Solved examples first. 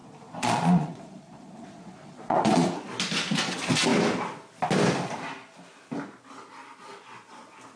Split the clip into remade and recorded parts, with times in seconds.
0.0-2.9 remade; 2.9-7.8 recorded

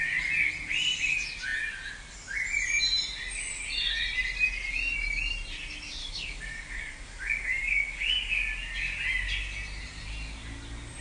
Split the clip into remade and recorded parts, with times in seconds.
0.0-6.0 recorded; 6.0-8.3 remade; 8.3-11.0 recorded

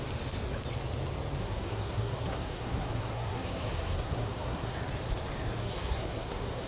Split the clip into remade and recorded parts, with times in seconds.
0.0-1.4 recorded; 1.4-4.8 remade; 4.8-5.6 recorded; 5.6-6.7 remade